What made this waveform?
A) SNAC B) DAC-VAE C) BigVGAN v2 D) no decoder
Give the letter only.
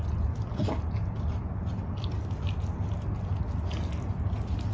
D